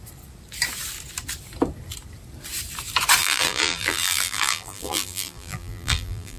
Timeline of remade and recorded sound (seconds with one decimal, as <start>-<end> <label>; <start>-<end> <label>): 0.0-3.2 recorded; 3.2-6.4 remade